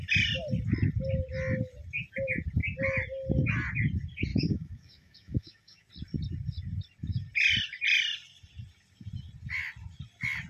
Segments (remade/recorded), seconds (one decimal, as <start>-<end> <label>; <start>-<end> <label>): 0.0-4.3 recorded; 4.3-5.9 remade; 5.9-10.5 recorded